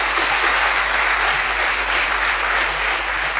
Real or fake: real